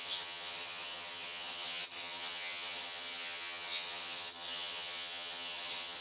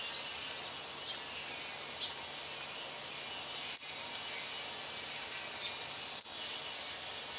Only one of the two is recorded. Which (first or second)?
second